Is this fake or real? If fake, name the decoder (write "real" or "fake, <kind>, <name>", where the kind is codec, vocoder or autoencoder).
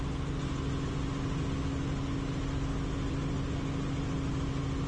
real